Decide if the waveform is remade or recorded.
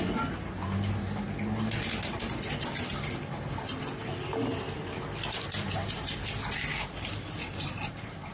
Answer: recorded